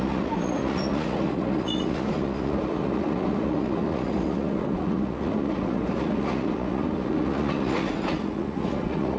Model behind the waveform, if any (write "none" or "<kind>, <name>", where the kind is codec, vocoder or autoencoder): vocoder, Vocos